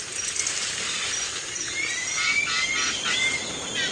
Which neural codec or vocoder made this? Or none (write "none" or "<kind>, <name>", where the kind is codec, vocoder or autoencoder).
none